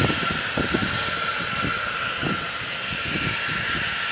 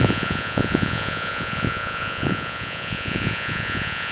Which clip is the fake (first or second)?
second